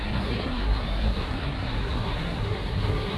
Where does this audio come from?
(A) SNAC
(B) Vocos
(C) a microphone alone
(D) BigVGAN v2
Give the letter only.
A